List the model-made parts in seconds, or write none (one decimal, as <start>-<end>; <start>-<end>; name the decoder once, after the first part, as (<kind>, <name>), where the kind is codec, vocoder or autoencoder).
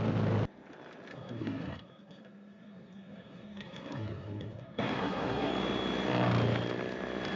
1.1-5.5 (codec, SNAC)